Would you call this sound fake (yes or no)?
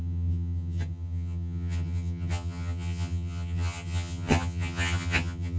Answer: yes